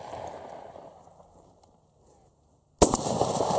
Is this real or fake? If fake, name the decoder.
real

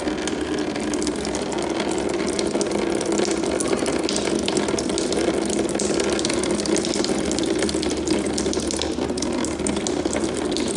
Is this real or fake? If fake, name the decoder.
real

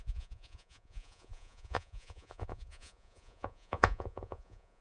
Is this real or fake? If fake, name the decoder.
fake, vocoder, Vocos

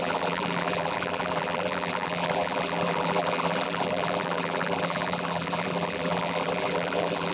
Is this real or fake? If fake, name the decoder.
fake, vocoder, BigVGAN v2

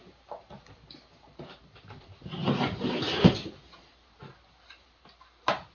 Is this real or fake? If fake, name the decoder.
real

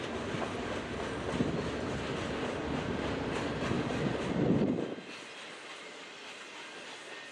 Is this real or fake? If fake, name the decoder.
real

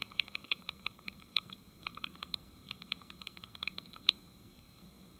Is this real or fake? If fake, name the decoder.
fake, codec, SNAC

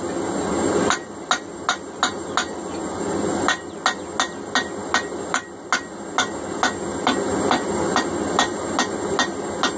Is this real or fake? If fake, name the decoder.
real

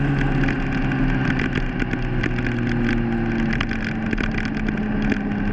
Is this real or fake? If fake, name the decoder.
real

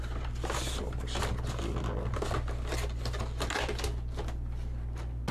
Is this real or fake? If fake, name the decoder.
real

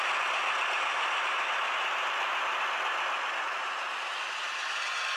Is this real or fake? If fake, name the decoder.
real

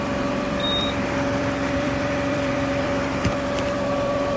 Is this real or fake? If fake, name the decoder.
fake, vocoder, BigVGAN v2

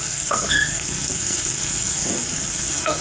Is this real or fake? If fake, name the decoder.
fake, codec, SNAC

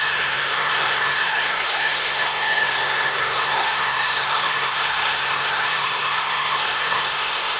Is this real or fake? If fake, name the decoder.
fake, codec, SNAC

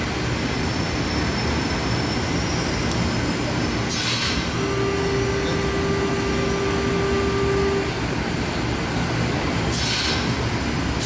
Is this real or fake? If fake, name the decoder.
real